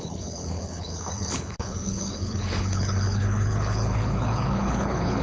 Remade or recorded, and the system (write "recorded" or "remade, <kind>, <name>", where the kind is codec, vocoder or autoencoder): remade, codec, HILCodec